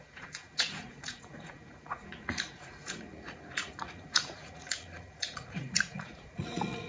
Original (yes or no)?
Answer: no